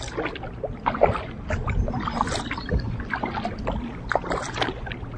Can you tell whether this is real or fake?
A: real